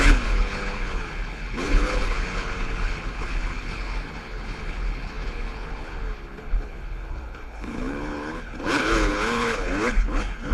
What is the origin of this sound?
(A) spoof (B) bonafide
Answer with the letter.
A